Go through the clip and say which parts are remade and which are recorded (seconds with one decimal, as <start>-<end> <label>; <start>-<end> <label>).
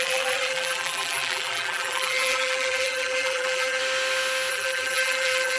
0.0-3.8 remade; 3.8-4.5 recorded; 4.5-5.6 remade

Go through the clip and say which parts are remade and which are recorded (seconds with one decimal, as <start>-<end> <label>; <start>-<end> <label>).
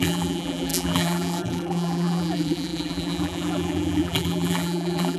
0.0-5.2 remade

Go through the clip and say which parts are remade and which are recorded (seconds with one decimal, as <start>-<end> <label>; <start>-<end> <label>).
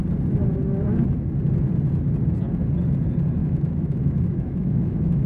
0.0-3.4 recorded; 3.4-5.3 remade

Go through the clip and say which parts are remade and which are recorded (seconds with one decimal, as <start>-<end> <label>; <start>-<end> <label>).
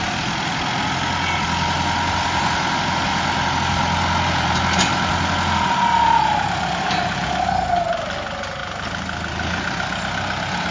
0.0-10.7 recorded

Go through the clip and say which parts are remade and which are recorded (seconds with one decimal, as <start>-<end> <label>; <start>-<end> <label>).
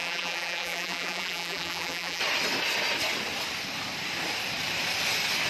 0.0-2.2 remade; 2.2-5.5 recorded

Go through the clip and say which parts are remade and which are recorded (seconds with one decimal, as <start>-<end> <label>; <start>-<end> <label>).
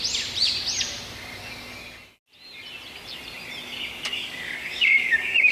0.0-4.1 recorded; 4.1-5.5 remade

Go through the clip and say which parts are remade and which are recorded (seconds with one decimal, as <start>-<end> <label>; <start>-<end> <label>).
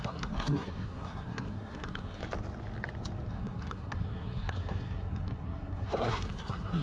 0.0-2.2 remade; 2.2-3.3 recorded; 3.3-6.8 remade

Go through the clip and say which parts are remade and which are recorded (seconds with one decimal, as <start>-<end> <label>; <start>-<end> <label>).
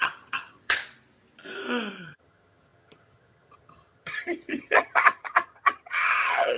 0.0-0.8 remade; 0.8-2.0 recorded; 2.0-6.6 remade